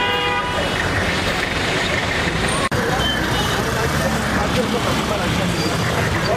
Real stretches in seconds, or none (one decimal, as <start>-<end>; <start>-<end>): none